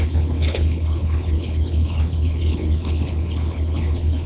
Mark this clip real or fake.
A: fake